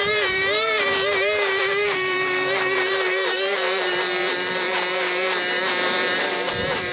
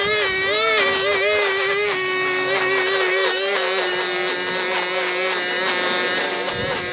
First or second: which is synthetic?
first